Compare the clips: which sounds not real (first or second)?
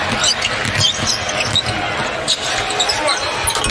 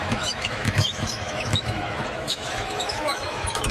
second